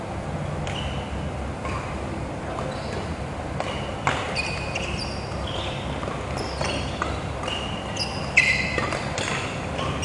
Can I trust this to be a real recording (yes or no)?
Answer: yes